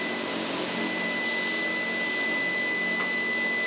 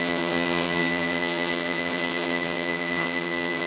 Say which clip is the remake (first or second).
second